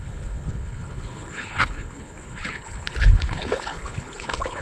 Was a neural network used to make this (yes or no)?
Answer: yes